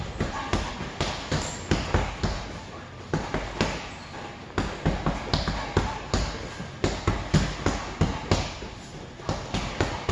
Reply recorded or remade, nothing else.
recorded